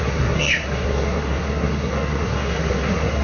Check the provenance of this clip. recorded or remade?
remade